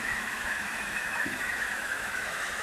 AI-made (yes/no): yes